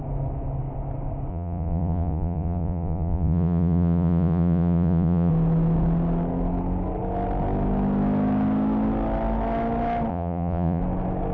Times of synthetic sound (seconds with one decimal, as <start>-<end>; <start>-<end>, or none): 1.3-5.3; 10.1-10.8